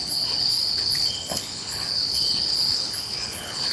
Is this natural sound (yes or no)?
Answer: no